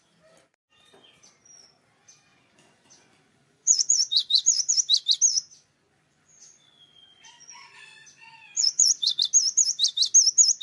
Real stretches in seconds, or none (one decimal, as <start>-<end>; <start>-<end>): 0.0-2.3; 4.7-5.3; 9.2-10.6

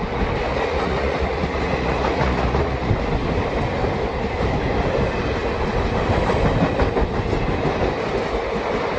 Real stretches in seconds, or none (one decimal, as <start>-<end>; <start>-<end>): 0.0-0.5; 2.9-9.0

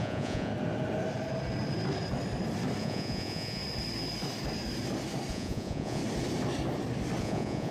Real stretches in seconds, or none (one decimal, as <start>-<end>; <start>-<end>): 0.5-2.8; 3.6-5.3; 6.0-7.2

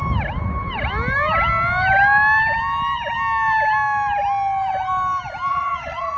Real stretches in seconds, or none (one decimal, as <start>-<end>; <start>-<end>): 0.0-5.5

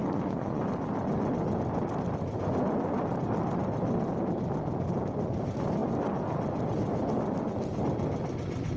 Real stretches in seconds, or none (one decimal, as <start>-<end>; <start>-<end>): 0.6-8.8